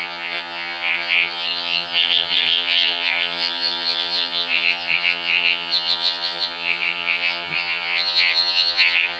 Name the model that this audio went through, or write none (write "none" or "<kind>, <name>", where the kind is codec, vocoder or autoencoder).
vocoder, HiFi-GAN